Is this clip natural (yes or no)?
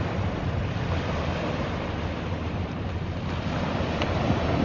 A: yes